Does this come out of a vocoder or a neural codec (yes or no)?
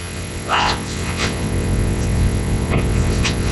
yes